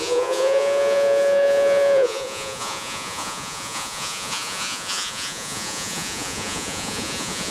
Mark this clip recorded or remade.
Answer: remade